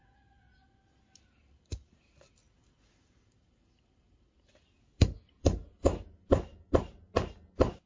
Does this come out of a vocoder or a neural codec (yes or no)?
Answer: no